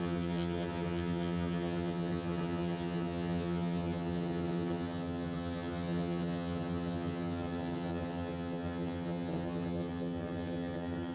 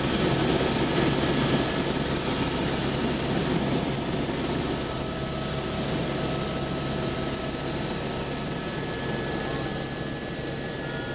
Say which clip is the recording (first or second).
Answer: second